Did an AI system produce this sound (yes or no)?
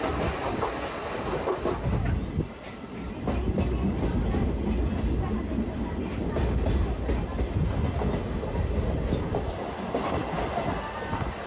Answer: no